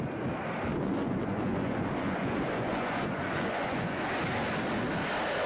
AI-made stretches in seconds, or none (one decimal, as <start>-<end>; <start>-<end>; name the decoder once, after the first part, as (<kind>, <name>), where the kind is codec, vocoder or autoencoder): 0.7-4.0 (vocoder, Vocos)